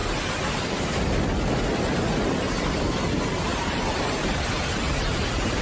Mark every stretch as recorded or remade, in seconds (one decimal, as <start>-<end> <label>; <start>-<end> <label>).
0.0-3.5 recorded; 3.5-5.6 remade